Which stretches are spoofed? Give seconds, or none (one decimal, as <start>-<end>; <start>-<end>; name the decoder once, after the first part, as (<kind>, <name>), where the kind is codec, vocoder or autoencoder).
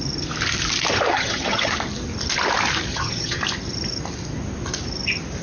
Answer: 1.1-1.7 (vocoder, HiFi-GAN); 2.9-3.4